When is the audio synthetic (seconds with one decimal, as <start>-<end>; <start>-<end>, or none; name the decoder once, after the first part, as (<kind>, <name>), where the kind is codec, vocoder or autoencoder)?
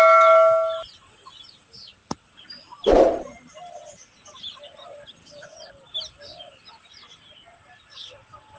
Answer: none